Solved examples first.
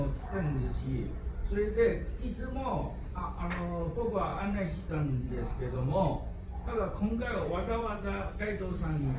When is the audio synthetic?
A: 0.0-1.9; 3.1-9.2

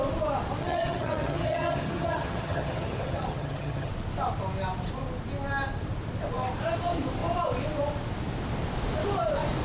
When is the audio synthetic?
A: 0.6-3.9

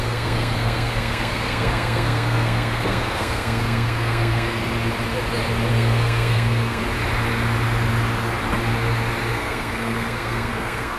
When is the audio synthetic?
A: 0.0-4.6; 5.7-6.8; 9.3-11.0

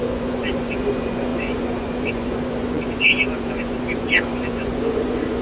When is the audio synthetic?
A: 0.0-5.4

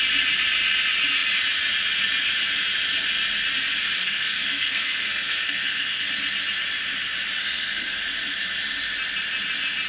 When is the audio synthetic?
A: 4.0-6.1; 7.4-8.0

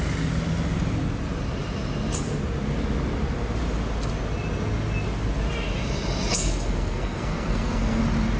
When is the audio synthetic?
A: 6.3-8.0